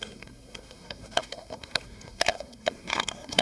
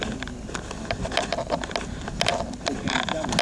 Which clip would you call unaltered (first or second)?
second